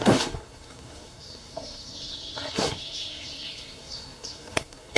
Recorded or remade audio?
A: remade